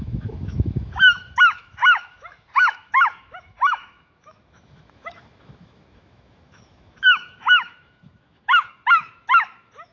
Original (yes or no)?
no